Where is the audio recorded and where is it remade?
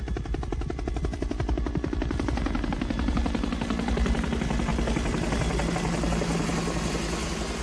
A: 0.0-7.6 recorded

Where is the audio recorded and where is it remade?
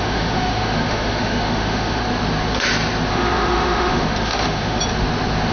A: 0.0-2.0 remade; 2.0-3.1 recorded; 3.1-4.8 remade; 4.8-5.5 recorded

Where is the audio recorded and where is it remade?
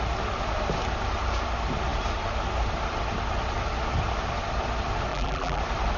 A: 0.0-5.1 recorded; 5.1-5.6 remade; 5.6-6.0 recorded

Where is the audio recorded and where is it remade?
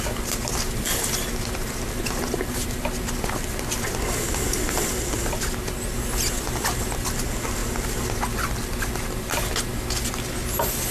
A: 0.0-10.9 recorded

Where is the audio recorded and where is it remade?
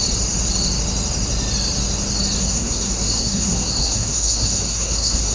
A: 0.0-2.4 recorded; 2.4-5.3 remade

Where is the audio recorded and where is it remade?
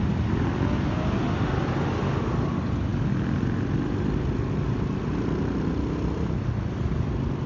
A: 0.0-7.5 recorded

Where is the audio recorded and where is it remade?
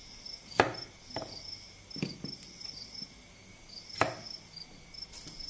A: 0.0-5.5 recorded